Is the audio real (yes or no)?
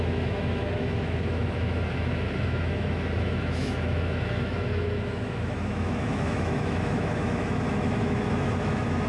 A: no